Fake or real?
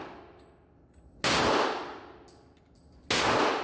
real